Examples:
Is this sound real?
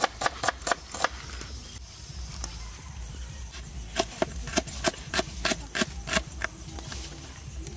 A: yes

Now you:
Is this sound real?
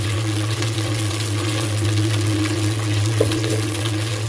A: no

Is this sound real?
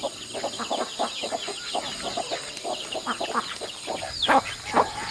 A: yes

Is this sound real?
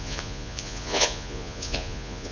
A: no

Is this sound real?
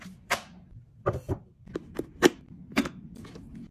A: no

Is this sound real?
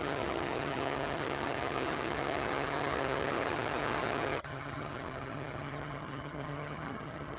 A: no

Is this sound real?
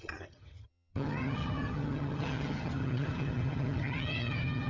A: no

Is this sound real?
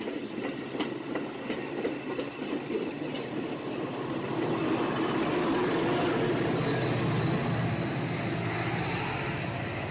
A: yes